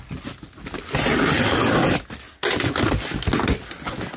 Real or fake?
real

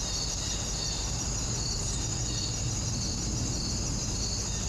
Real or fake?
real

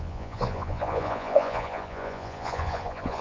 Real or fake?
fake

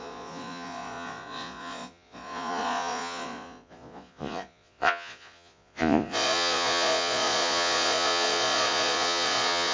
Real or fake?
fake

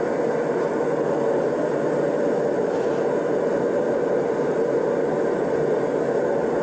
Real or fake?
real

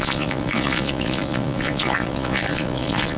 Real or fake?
fake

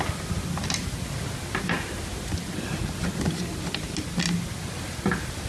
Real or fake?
real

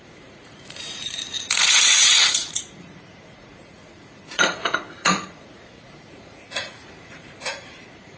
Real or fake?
fake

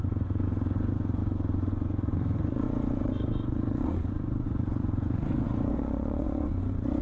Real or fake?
fake